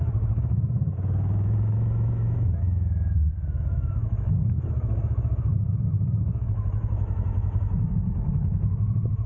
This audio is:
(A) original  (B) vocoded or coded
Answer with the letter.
B